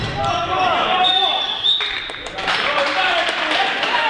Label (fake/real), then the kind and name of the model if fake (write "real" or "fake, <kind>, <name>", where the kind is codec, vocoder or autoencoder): fake, vocoder, BigVGAN v2